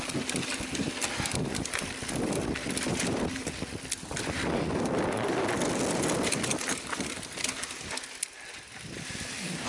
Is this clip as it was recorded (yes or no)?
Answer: yes